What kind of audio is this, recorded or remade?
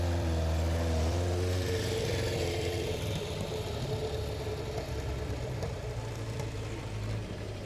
remade